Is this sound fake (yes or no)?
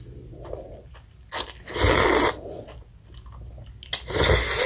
no